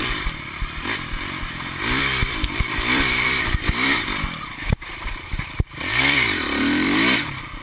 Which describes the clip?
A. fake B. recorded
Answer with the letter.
A